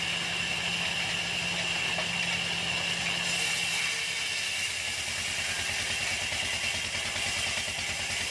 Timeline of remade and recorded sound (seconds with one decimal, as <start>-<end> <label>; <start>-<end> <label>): 0.0-8.3 recorded